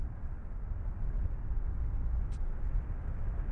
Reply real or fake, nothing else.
real